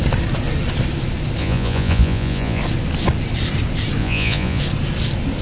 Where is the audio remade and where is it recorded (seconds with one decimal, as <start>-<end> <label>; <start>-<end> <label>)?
0.0-1.4 recorded; 1.4-2.6 remade; 2.6-4.0 recorded; 4.0-4.6 remade; 4.6-5.4 recorded